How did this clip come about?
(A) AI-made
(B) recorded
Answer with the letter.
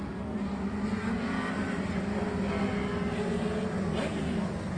B